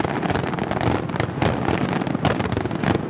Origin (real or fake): real